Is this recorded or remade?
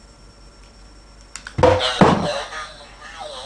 recorded